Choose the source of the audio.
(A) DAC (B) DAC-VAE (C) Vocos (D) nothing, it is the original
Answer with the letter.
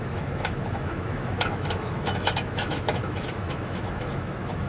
B